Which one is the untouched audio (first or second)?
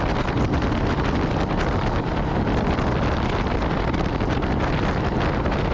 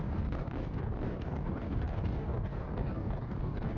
first